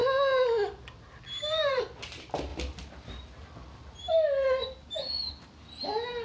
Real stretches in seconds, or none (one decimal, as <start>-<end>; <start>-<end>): 0.0-6.2